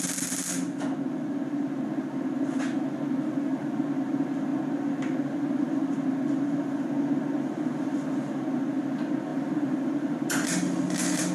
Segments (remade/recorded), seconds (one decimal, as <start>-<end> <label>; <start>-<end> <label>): 0.0-9.3 recorded; 9.3-10.3 remade; 10.3-11.3 recorded

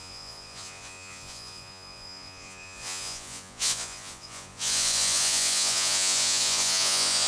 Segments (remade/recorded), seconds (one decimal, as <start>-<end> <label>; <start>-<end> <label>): 0.0-7.3 remade

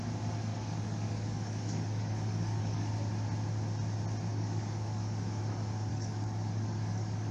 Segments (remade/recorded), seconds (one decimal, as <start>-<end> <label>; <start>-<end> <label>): 0.0-0.5 recorded; 0.5-2.9 remade; 2.9-4.3 recorded; 4.3-5.4 remade; 5.4-5.9 recorded; 5.9-7.3 remade

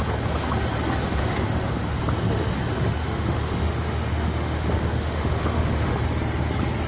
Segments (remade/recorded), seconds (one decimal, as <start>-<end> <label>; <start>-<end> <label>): 0.0-1.2 recorded; 1.2-2.0 remade; 2.0-3.0 recorded; 3.0-6.0 remade; 6.0-6.9 recorded

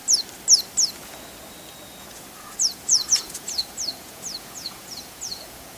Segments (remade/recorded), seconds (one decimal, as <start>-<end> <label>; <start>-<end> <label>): 0.0-2.0 recorded; 2.0-5.8 remade

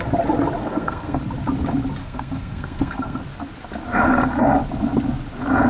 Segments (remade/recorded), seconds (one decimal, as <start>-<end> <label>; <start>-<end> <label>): 0.0-0.6 recorded; 0.6-1.2 remade; 1.2-2.0 recorded; 2.0-3.2 remade; 3.2-5.7 recorded